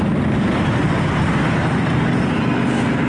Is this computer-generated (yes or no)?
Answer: no